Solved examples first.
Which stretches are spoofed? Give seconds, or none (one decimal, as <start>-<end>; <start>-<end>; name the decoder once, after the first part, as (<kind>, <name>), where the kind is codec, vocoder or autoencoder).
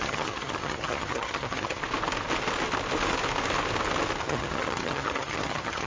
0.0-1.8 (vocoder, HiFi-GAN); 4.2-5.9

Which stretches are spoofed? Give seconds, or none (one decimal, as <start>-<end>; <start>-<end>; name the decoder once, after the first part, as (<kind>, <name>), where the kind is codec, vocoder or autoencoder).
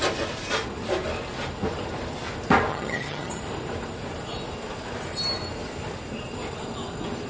2.7-3.4 (vocoder, HiFi-GAN)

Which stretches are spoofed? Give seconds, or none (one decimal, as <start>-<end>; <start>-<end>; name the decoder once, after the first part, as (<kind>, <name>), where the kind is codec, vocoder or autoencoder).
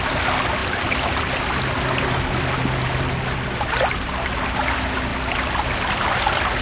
none